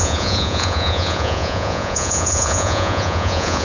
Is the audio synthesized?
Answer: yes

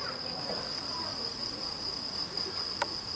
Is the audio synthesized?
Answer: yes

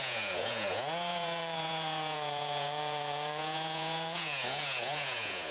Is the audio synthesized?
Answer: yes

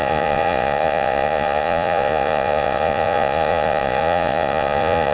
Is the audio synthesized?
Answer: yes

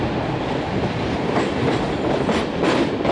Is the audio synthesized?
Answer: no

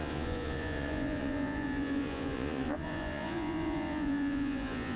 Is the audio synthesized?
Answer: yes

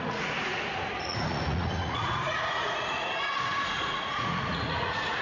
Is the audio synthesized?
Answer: yes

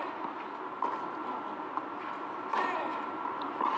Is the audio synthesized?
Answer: no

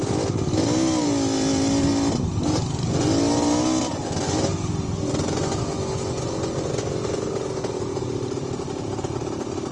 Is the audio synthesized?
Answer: no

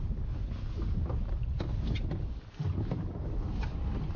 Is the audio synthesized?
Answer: no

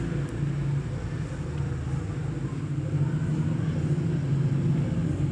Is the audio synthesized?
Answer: no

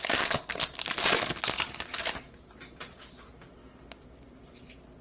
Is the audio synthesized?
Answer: no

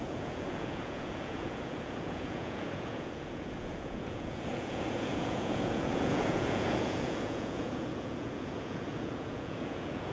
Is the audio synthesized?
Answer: yes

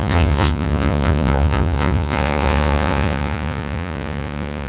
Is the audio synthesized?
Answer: yes